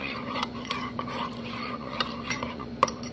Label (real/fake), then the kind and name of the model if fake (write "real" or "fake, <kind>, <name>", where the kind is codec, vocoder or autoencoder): fake, vocoder, Vocos